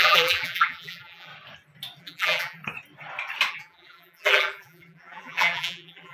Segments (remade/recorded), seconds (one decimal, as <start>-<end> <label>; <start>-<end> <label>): 0.0-1.3 remade; 1.3-2.0 recorded; 2.0-2.6 remade; 2.6-3.5 recorded; 3.5-6.1 remade